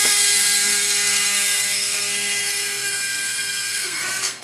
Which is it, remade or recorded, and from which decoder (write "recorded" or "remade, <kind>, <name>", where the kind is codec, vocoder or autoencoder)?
remade, codec, SNAC